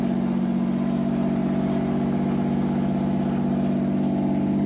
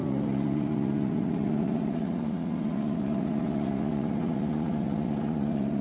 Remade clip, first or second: second